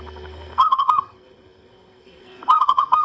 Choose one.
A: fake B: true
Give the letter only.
A